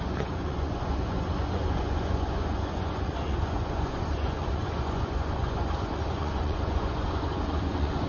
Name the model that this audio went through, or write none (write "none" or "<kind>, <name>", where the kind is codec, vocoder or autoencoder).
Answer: vocoder, Vocos